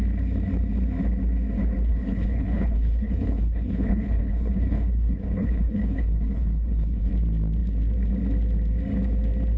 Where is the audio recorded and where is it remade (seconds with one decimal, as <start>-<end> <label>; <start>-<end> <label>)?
0.0-1.9 recorded; 1.9-7.1 remade; 7.1-9.6 recorded